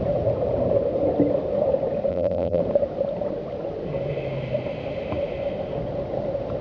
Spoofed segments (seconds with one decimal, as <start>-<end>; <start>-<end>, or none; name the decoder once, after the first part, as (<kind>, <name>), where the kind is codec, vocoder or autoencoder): 2.1-2.6 (vocoder, BigVGAN v2)